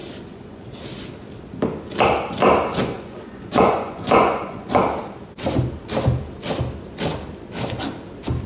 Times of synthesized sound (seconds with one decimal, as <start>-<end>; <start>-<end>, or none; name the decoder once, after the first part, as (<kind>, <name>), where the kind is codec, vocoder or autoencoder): 0.0-0.7 (vocoder, Vocos); 2.8-4.8